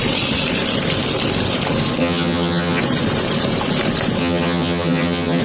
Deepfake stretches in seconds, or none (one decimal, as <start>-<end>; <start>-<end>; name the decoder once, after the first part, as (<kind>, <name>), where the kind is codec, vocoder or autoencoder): 2.0-2.8 (vocoder, HiFi-GAN); 4.2-5.4